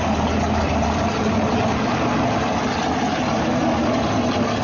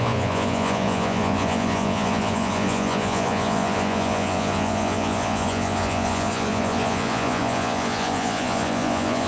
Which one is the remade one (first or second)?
second